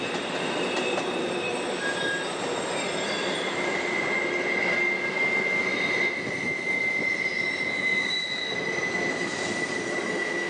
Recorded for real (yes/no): yes